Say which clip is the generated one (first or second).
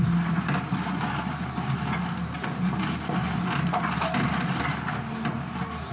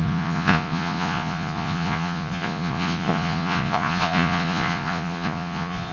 second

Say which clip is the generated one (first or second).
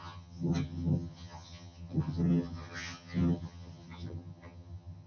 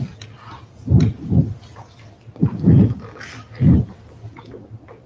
first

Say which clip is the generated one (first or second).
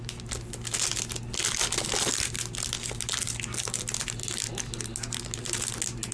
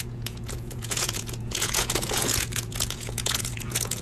second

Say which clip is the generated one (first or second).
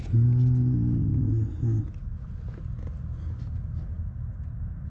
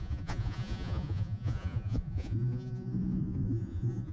second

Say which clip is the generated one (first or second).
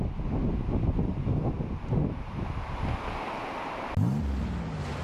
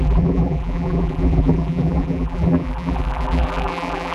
second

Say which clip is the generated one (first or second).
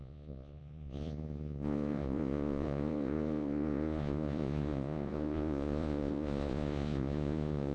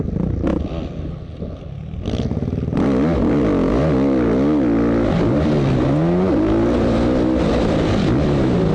first